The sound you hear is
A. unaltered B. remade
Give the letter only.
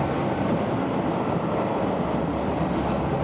B